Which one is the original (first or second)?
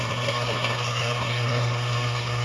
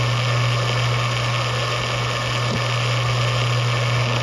second